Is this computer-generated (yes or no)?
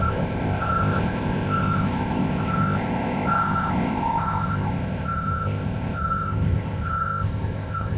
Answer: yes